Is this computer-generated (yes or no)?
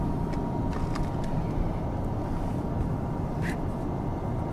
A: no